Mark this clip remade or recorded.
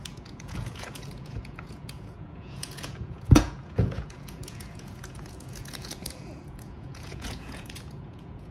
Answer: remade